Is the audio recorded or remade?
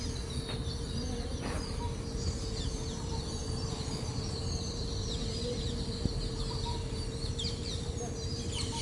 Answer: recorded